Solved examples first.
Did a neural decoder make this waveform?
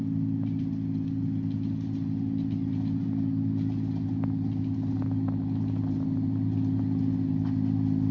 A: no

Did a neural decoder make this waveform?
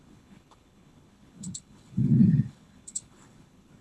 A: yes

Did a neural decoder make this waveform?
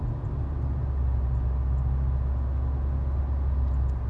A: no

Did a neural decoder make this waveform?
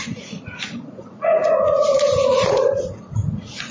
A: yes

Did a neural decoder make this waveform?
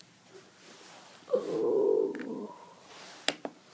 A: no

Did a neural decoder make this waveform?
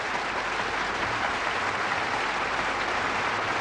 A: no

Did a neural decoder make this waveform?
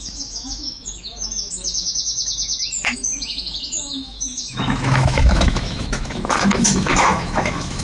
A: yes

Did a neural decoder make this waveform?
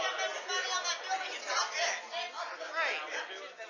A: no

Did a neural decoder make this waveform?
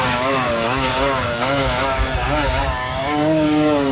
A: yes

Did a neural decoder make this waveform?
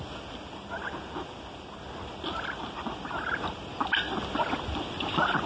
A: no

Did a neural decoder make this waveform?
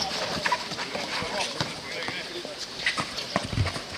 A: no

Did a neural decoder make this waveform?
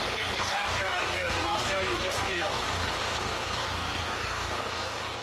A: yes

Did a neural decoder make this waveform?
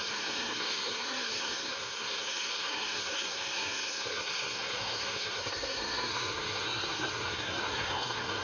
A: yes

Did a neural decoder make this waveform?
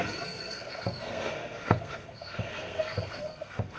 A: yes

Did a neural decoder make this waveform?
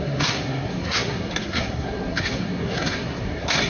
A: yes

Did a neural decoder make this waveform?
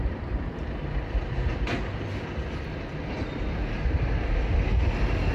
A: no